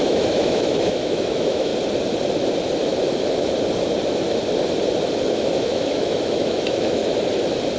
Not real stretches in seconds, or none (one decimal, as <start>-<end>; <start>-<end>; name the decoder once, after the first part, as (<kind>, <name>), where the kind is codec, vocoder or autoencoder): 0.0-1.7 (autoencoder, DAC-VAE); 5.3-7.0